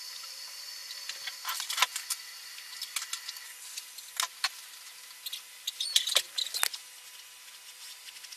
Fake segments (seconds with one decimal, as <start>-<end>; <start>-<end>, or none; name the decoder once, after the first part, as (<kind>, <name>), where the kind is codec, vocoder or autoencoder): none